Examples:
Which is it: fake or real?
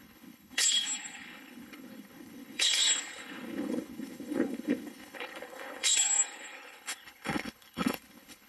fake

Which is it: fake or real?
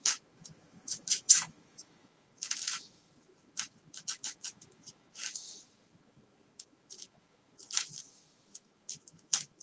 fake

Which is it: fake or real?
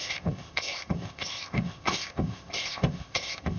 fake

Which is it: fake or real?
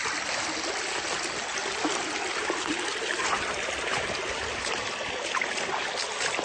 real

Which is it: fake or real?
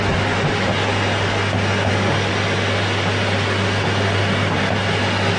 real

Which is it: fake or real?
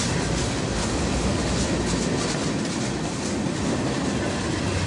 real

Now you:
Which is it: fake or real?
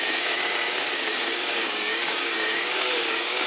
fake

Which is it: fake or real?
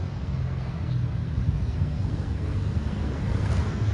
fake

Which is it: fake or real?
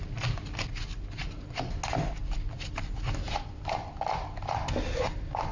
real